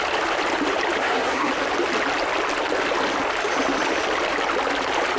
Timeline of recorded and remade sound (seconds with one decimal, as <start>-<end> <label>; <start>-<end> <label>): 0.0-1.0 recorded; 1.0-1.5 remade; 1.5-5.2 recorded